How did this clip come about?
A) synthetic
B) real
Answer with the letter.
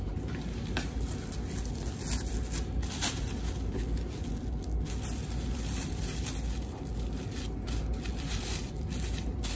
B